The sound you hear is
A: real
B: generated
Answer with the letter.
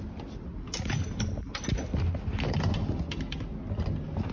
A